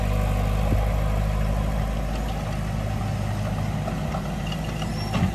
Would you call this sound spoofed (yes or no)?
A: no